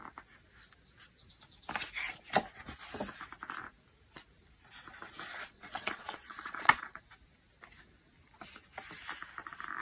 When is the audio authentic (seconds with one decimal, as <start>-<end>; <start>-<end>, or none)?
0.0-5.3; 7.0-9.8